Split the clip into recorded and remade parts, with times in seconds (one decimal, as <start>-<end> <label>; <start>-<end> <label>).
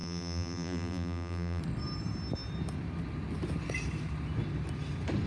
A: 0.0-1.6 remade; 1.6-5.3 recorded